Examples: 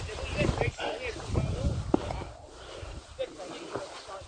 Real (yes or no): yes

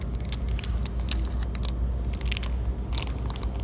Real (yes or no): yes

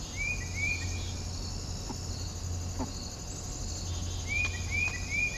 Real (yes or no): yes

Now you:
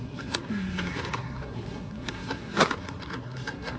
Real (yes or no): no